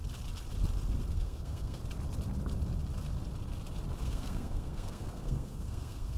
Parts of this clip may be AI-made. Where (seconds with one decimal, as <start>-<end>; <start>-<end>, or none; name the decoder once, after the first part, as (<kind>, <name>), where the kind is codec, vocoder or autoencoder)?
1.1-1.8 (codec, SNAC); 4.0-6.2